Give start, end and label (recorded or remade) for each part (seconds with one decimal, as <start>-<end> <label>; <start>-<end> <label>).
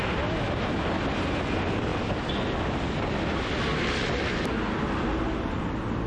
0.0-6.1 recorded